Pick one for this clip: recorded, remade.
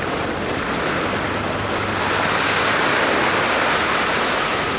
recorded